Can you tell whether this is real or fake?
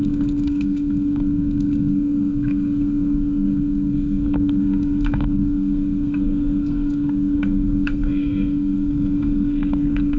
fake